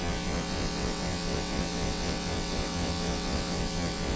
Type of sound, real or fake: fake